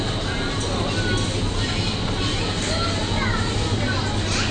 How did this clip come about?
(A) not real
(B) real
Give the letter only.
B